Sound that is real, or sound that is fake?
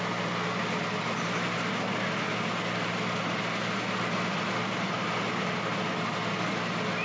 real